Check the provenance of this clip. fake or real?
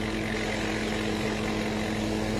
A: real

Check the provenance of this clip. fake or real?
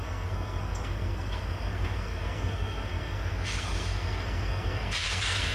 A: fake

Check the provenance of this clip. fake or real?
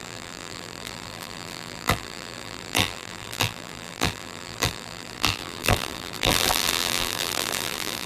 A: fake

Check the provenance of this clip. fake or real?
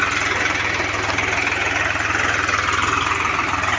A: real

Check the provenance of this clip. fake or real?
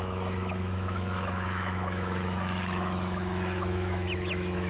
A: fake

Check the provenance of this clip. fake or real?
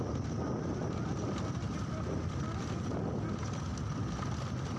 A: real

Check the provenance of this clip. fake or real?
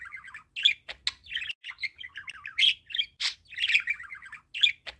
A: real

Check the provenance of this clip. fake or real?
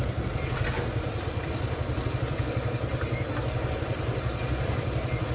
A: fake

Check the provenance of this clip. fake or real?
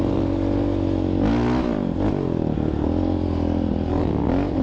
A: real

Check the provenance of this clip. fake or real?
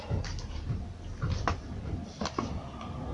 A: real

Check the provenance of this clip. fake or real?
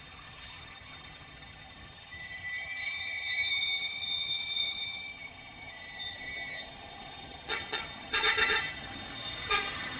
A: fake